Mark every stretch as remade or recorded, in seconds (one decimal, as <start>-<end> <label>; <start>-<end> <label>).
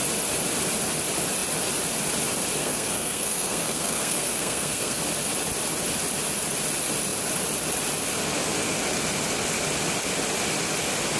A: 0.0-2.6 recorded; 2.6-5.0 remade; 5.0-11.2 recorded